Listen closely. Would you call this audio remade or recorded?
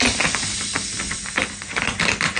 recorded